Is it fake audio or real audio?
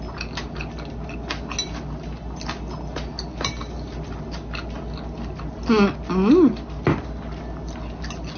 real